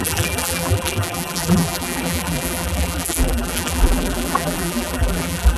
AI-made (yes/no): yes